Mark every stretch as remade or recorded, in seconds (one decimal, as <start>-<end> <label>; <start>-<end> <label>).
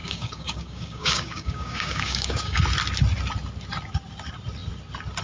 0.0-2.6 remade; 2.6-5.2 recorded